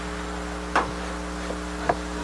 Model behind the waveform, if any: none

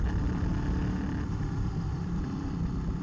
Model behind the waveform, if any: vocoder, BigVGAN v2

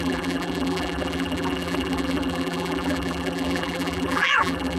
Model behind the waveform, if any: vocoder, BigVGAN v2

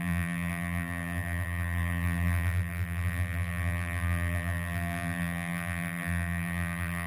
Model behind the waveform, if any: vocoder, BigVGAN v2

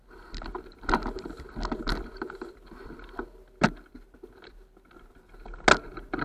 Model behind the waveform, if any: none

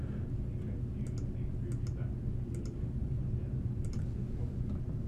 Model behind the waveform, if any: none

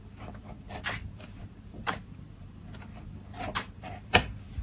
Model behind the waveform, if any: vocoder, BigVGAN v2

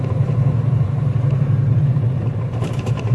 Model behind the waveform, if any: vocoder, BigVGAN v2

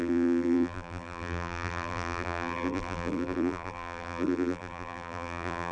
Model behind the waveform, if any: vocoder, BigVGAN v2